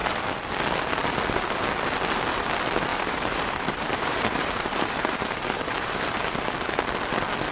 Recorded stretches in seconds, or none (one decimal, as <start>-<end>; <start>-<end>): 0.0-2.9; 6.2-7.5